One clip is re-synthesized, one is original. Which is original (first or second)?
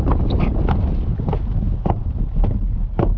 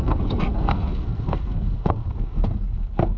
first